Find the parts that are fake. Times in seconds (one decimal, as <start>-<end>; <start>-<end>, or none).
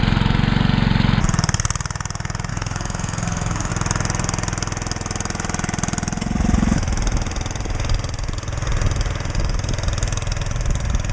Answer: 2.5-3.7